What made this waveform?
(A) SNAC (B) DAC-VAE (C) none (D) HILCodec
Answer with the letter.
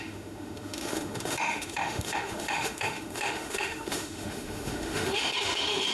B